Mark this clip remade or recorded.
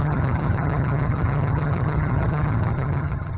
remade